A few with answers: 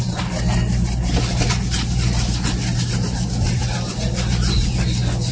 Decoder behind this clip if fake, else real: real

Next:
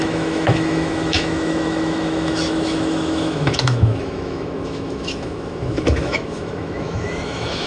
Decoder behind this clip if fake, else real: fake, autoencoder, DAC-VAE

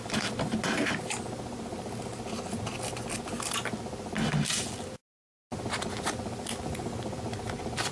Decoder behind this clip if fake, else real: real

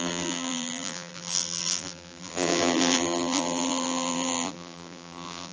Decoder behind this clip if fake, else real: fake, vocoder, BigVGAN v2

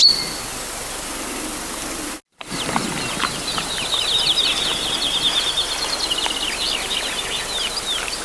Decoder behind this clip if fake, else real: real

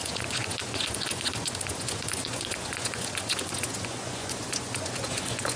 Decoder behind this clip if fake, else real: fake, vocoder, Vocos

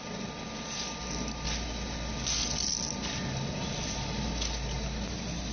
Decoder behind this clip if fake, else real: real